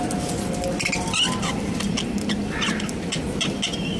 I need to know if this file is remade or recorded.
recorded